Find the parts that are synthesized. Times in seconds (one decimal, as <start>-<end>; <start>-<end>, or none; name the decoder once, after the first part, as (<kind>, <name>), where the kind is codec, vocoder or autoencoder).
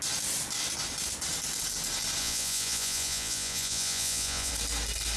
2.2-4.5 (vocoder, Vocos)